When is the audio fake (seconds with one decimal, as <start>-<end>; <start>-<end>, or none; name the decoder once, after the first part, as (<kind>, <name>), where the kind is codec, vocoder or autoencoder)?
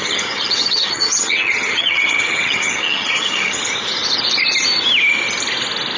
0.0-3.6 (vocoder, HiFi-GAN)